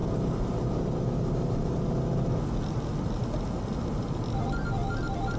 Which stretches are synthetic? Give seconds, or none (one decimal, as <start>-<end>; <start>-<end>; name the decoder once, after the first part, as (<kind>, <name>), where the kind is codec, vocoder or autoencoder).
none